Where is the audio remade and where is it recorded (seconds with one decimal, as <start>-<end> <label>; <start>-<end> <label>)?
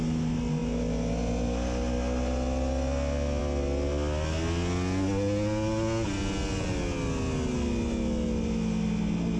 0.0-9.4 recorded